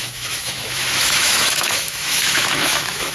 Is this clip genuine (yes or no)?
no